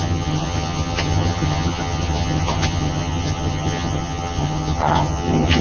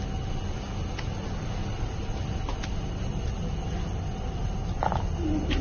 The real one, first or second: second